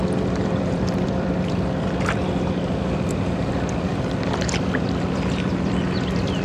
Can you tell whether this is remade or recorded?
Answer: remade